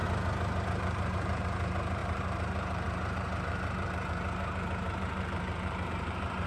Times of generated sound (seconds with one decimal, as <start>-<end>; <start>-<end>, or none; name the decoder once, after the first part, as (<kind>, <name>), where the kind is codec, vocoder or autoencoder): 0.6-6.5 (vocoder, BigVGAN v2)